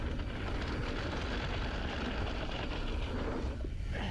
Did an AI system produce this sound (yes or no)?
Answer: no